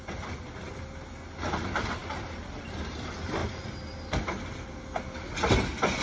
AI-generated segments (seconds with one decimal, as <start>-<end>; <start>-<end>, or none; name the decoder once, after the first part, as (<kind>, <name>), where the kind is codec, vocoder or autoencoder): 2.0-2.9 (vocoder, BigVGAN v2)